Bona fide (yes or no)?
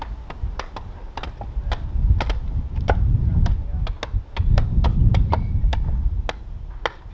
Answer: yes